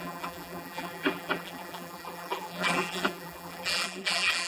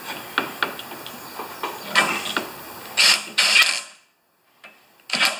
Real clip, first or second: second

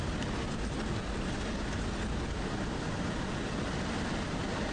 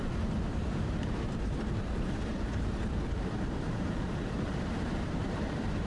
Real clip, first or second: first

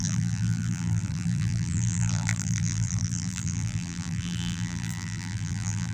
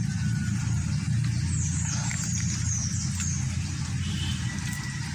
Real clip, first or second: second